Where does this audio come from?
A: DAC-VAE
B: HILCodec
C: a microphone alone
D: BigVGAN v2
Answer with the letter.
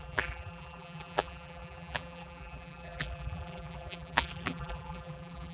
D